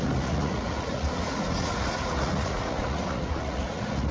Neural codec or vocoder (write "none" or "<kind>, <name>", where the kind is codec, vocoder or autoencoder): vocoder, Vocos